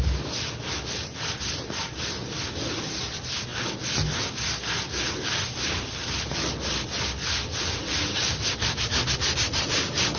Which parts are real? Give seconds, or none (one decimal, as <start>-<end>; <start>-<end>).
0.0-10.2